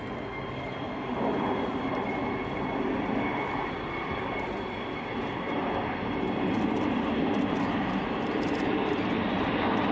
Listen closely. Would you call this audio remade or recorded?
recorded